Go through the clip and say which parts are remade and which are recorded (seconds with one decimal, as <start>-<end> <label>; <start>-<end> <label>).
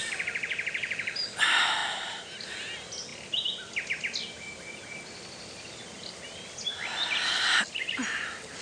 0.0-8.6 recorded